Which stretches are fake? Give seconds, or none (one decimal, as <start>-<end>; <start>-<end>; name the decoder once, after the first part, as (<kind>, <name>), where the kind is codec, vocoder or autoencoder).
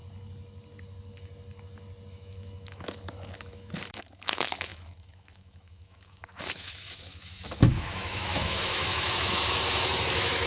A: 2.1-10.5 (autoencoder, DAC-VAE)